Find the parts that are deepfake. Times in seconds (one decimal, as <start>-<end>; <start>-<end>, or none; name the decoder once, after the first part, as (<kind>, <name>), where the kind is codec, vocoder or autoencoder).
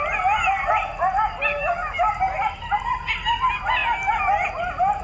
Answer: 1.5-2.1 (autoencoder, DAC-VAE)